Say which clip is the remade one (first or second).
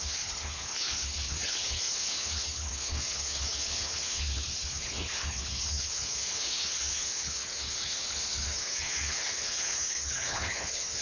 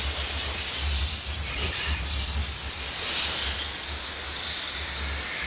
first